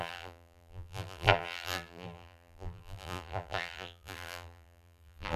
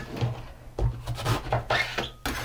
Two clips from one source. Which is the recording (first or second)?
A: second